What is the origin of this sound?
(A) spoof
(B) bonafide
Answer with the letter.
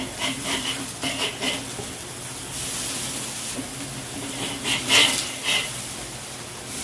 B